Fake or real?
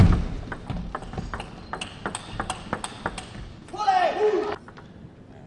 real